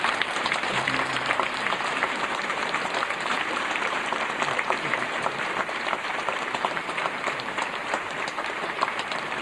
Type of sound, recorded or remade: remade